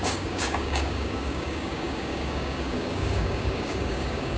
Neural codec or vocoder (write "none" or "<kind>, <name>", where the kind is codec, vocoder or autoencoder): codec, DAC